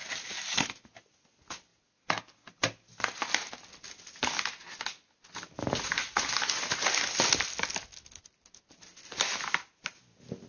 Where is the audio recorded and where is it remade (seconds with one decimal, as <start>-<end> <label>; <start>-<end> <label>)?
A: 0.0-10.5 recorded